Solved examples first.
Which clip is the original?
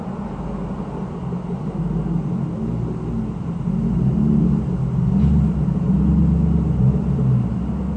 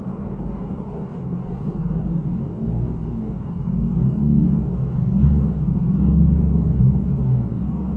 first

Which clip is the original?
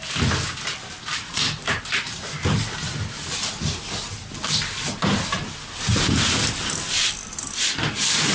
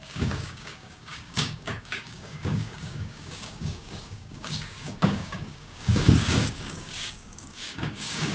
first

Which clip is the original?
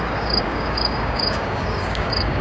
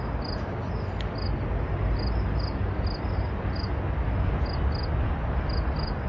second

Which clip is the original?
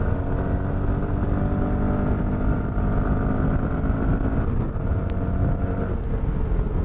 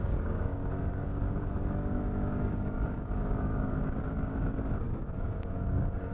first